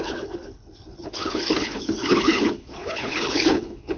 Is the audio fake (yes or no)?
yes